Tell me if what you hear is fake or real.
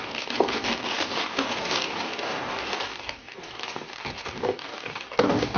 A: fake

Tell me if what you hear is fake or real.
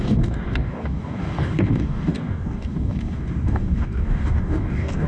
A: fake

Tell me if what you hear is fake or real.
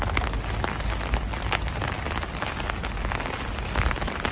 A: real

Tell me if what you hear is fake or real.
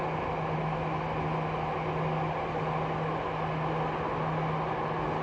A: real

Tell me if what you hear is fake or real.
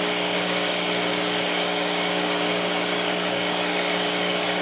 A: fake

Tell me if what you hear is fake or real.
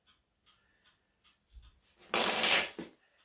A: real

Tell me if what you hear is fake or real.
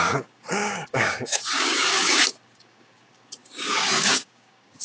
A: fake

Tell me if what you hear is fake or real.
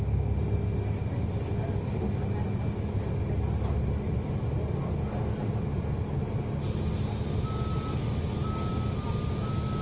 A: real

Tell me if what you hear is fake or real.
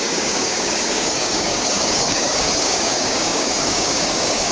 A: fake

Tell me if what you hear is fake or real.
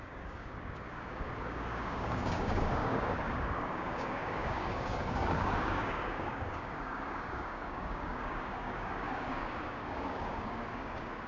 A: fake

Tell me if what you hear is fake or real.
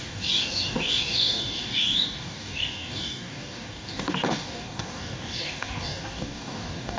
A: fake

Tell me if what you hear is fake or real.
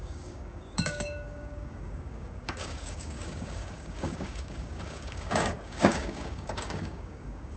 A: fake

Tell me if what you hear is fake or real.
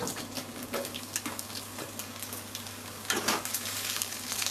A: fake